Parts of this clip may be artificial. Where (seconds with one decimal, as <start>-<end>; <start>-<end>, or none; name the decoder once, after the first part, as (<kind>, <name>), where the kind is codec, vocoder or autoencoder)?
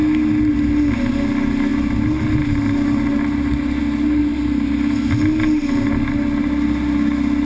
4.2-4.7 (vocoder, BigVGAN v2)